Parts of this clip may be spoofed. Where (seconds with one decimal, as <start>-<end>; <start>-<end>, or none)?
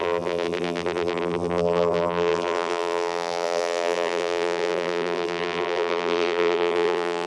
0.0-7.3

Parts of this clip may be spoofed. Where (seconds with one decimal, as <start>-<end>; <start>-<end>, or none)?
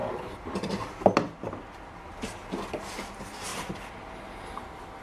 none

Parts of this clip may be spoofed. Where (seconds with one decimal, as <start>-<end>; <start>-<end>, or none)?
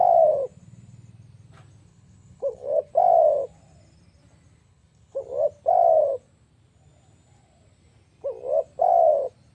1.9-2.9; 4.6-5.2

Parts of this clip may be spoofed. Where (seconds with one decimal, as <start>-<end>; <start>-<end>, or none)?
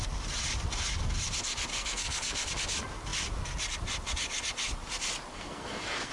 1.7-2.5; 5.3-6.1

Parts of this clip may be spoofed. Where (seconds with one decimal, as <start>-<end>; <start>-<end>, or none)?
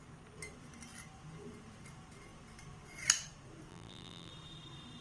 3.7-4.3